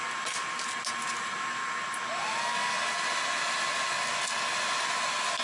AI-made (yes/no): no